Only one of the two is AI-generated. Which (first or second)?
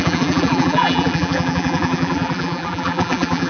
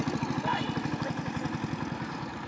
first